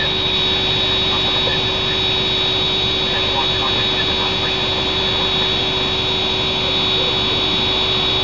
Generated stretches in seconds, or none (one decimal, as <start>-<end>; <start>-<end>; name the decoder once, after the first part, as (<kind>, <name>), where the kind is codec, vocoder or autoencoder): none